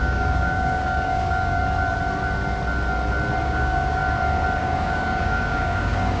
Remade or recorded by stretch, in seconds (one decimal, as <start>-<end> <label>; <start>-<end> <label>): 0.0-1.6 remade; 1.6-3.4 recorded; 3.4-4.0 remade; 4.0-4.6 recorded; 4.6-6.2 remade